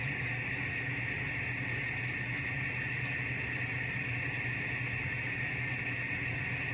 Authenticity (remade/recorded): recorded